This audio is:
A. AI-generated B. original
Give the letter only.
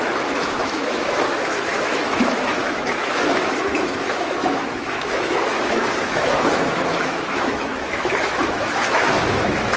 A